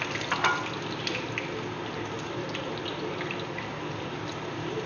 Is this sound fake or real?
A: real